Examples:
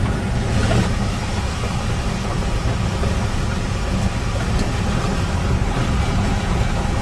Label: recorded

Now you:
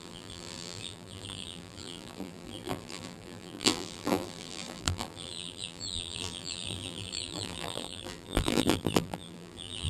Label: remade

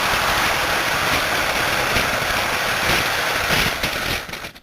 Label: recorded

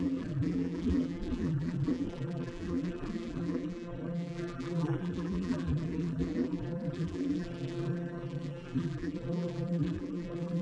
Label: remade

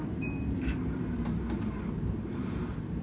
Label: remade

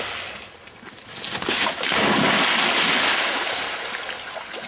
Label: recorded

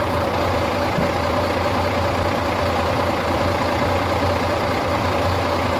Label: remade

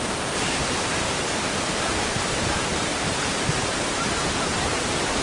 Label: remade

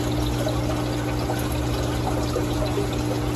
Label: recorded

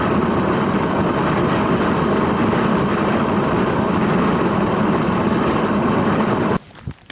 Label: recorded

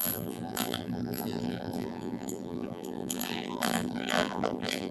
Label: remade